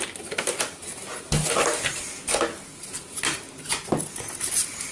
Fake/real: real